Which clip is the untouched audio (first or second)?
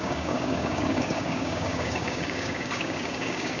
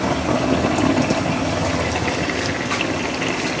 second